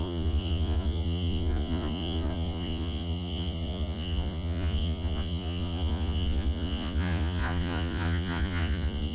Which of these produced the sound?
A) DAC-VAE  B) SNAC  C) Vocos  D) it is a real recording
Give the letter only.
C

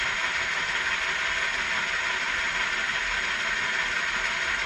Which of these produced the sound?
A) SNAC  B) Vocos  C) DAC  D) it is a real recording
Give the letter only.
D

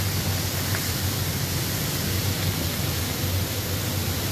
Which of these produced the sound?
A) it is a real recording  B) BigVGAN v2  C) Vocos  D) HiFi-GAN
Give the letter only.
A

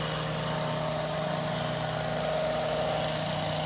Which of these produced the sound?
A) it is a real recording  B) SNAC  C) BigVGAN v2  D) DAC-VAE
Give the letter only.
A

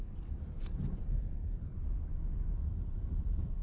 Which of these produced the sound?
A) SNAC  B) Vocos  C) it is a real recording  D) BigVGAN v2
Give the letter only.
D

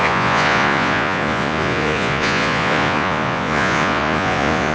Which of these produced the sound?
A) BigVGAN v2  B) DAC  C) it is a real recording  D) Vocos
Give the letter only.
D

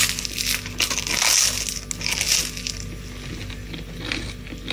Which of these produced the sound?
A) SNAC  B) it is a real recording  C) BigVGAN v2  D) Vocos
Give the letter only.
B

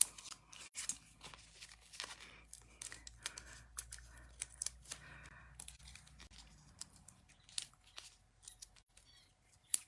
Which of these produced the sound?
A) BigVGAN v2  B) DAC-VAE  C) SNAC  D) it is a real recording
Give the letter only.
D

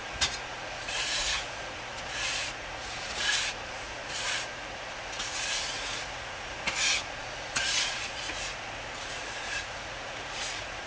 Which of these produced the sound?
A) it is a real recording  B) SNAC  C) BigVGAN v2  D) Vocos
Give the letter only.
D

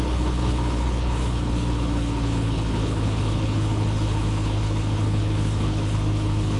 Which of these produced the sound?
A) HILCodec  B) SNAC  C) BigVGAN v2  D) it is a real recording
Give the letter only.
A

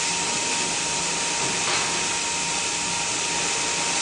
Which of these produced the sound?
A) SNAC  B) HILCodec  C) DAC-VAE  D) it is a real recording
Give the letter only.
D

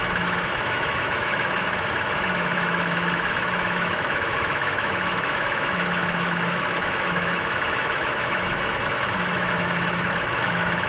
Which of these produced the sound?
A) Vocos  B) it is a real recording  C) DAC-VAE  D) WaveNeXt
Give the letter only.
C